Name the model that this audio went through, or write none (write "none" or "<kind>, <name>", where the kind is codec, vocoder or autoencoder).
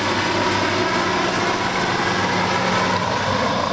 none